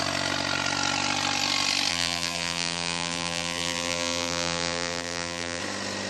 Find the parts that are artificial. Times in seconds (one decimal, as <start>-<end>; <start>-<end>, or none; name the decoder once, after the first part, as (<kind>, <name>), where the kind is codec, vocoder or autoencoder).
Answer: 1.9-5.6 (vocoder, BigVGAN v2)

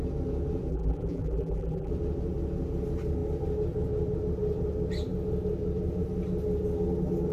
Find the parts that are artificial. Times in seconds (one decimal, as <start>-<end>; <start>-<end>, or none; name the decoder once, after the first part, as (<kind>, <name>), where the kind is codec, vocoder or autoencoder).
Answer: 0.7-1.9 (vocoder, BigVGAN v2)

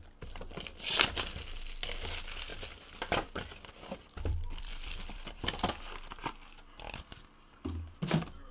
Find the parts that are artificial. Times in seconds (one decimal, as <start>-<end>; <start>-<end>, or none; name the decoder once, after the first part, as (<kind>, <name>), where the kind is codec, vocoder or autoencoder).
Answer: 3.5-5.7 (vocoder, BigVGAN v2)

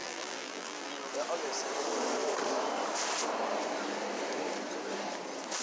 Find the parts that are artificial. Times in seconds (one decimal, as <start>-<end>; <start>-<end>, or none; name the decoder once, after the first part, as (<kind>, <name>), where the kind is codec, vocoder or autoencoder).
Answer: 0.0-1.1 (vocoder, BigVGAN v2)

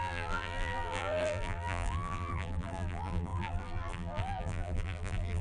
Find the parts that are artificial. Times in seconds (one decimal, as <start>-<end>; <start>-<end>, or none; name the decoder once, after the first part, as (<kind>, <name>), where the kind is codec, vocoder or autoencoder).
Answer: 0.0-5.4 (vocoder, BigVGAN v2)

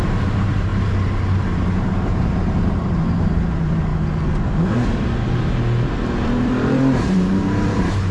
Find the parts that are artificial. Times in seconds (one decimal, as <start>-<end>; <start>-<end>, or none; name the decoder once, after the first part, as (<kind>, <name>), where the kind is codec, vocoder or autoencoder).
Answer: 0.0-0.7 (vocoder, BigVGAN v2); 1.3-3.9; 5.9-8.1